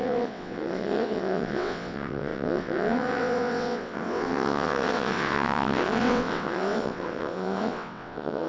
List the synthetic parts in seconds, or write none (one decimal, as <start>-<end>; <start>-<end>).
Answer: 0.0-8.5